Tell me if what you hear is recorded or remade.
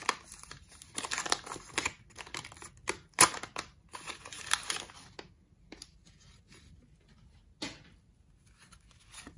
recorded